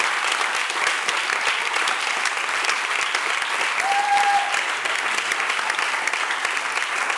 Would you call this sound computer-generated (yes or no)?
no